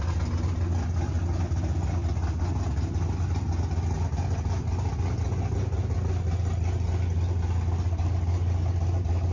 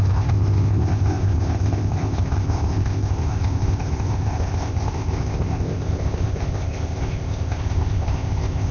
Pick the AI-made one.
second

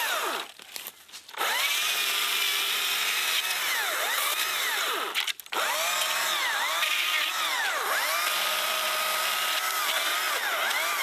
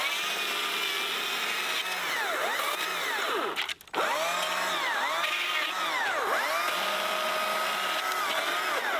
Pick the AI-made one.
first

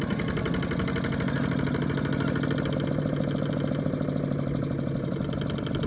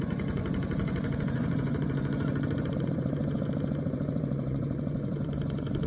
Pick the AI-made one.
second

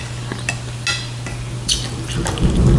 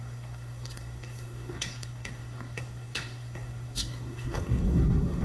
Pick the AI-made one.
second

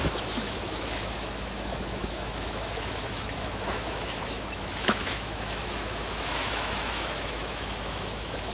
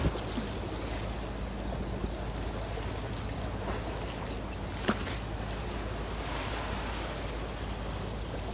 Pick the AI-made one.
first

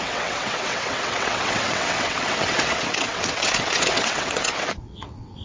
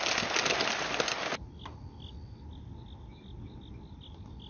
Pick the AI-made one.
first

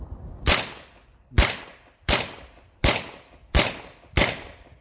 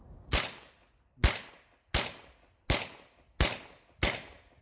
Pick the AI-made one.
first